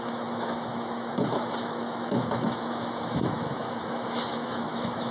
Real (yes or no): no